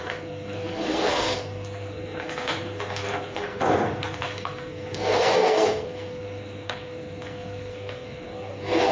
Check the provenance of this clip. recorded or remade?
remade